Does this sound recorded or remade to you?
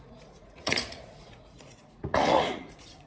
remade